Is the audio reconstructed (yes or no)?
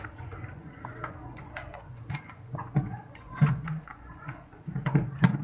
yes